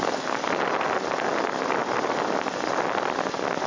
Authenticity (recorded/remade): recorded